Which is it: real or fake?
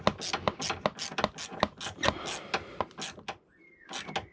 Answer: real